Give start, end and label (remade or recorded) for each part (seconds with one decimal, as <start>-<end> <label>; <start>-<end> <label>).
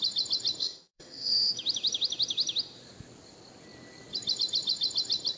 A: 0.0-0.6 recorded; 0.6-1.5 remade; 1.5-5.4 recorded